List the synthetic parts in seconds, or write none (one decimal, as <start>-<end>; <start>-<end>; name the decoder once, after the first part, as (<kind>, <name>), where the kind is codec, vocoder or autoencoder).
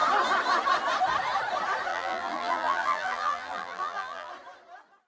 1.9-4.3 (vocoder, BigVGAN v2)